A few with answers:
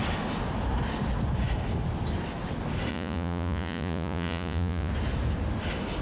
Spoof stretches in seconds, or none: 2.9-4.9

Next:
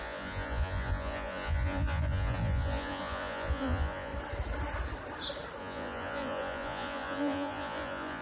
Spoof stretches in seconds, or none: 0.0-4.1; 5.6-8.2